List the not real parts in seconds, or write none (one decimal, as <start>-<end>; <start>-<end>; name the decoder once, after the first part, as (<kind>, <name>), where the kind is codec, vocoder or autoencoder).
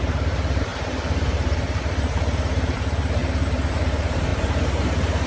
0.0-0.7 (vocoder, BigVGAN v2); 1.8-3.2; 3.7-4.3